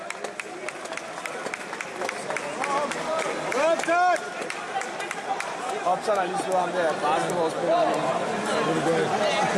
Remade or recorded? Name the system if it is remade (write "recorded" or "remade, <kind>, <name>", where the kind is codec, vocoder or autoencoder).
recorded